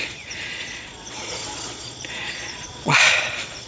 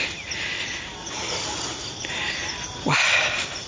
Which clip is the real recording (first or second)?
second